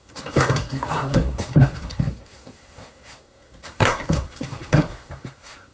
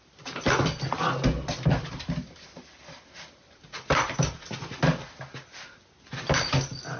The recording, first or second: second